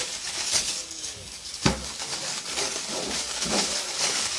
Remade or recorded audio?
remade